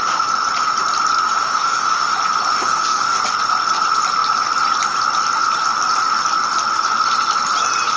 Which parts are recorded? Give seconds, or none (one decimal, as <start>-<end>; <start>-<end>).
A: 0.0-1.4; 2.1-2.5; 3.2-8.0